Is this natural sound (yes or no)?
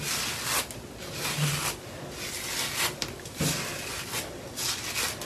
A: yes